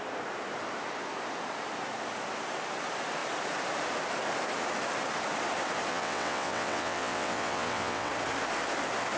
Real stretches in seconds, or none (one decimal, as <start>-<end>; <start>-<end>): 0.0-5.9; 8.1-9.2

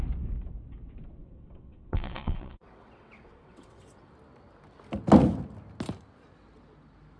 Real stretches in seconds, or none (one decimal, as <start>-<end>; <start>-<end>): 0.0-1.2; 4.1-7.2

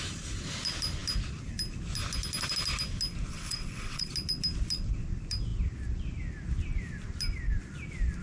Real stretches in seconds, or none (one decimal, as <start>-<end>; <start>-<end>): 0.0-3.3; 4.1-8.2

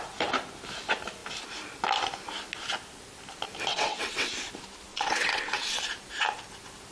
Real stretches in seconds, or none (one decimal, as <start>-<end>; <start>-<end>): 0.0-3.7; 4.3-4.9; 5.8-6.9

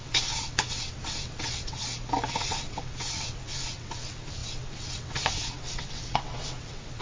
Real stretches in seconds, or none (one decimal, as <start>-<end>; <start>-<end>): 1.8-2.3